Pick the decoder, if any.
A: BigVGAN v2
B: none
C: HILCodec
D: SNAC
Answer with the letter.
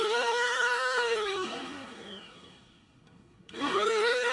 D